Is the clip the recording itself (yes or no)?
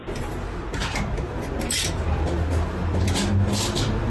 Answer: yes